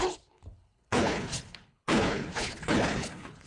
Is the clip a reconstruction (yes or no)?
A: yes